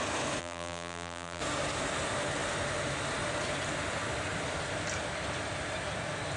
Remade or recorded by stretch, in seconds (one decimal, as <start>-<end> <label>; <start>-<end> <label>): 0.0-0.4 recorded; 0.4-1.4 remade; 1.4-6.4 recorded